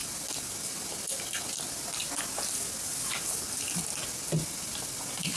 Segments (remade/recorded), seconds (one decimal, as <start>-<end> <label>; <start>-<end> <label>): 0.0-5.4 recorded